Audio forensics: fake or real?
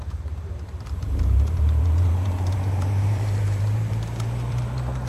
fake